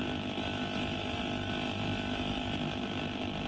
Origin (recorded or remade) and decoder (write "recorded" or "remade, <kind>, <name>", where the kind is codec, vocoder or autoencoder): recorded